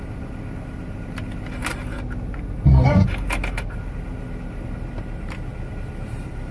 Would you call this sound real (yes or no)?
yes